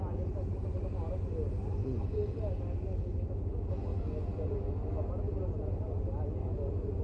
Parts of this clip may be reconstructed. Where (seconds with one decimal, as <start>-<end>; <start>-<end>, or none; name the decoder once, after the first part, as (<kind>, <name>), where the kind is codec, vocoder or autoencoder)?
1.8-2.5 (vocoder, BigVGAN v2)